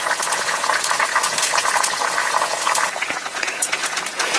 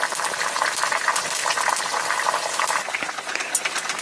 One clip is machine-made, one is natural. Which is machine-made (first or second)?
first